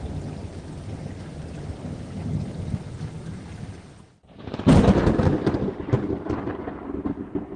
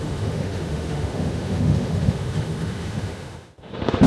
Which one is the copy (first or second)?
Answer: second